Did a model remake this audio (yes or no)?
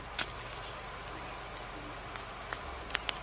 no